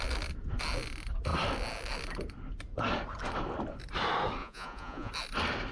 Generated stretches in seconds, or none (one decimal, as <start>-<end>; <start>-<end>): 4.4-5.1